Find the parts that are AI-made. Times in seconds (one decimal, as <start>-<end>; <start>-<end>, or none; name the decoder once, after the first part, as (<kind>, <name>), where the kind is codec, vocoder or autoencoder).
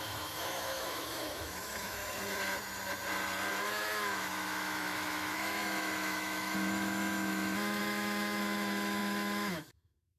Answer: 0.0-2.0 (autoencoder, DAC-VAE); 3.5-10.2